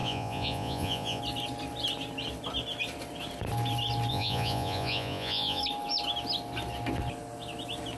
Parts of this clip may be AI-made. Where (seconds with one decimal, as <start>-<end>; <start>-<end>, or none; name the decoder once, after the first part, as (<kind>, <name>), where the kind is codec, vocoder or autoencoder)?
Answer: 0.0-1.2 (vocoder, Vocos); 4.1-5.6